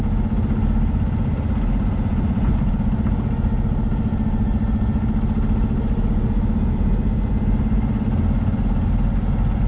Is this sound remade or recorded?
recorded